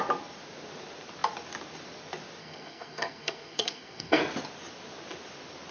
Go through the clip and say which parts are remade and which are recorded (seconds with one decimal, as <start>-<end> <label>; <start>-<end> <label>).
0.0-2.4 recorded; 2.4-4.2 remade; 4.2-5.7 recorded